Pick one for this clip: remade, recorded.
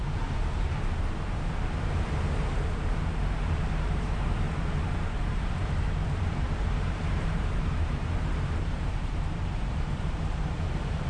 remade